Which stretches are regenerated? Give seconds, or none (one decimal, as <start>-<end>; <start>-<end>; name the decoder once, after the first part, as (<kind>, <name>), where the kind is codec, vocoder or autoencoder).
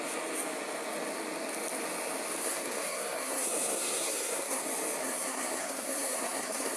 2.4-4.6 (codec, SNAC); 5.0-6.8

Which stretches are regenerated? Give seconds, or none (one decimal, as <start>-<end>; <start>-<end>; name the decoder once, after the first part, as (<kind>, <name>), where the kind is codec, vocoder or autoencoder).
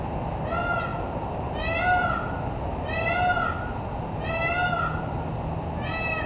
none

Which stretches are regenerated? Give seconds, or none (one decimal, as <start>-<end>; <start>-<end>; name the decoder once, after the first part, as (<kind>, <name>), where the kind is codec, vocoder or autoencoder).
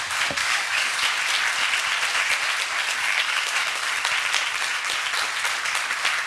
0.4-1.0 (codec, DAC); 2.8-3.9